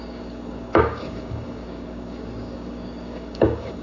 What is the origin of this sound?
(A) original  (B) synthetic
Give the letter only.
B